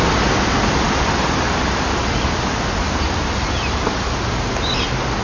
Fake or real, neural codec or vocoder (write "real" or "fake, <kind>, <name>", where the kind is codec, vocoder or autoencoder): real